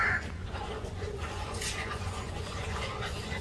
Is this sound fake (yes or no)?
yes